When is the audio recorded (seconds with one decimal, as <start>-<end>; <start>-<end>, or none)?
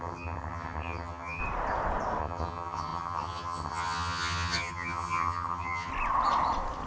1.4-2.2; 5.9-6.9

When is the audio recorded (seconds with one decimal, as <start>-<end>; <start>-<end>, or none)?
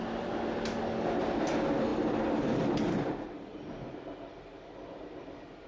0.0-5.7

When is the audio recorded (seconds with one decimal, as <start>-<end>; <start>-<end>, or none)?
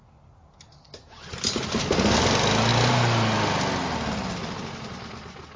0.0-5.6